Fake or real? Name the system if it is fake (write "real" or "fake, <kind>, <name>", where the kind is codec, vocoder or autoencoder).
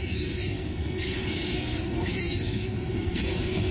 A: fake, codec, SNAC